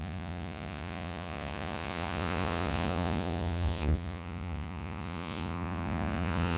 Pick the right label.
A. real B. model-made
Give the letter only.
B